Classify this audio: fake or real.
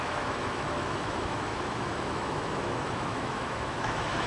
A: fake